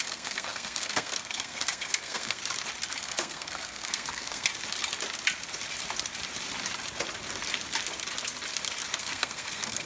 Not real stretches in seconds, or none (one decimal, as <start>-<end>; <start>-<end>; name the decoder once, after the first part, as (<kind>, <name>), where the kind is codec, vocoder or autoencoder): 0.0-2.4 (codec, SNAC); 3.0-4.5; 9.0-9.9